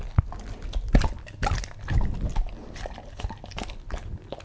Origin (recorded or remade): recorded